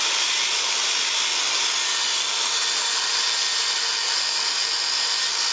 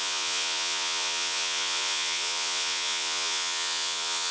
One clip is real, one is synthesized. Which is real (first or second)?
first